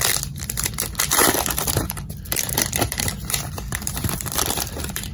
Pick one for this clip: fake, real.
fake